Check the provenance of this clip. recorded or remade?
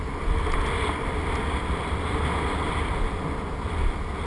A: recorded